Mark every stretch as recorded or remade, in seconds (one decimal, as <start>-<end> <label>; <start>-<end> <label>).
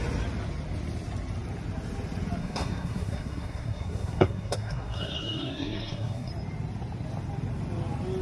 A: 0.0-2.4 recorded; 2.4-6.3 remade; 6.3-8.2 recorded